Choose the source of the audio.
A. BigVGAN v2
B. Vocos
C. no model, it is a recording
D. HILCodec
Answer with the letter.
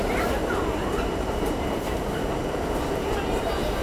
A